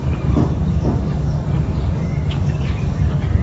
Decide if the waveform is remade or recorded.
remade